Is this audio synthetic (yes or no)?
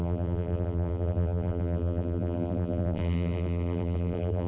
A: yes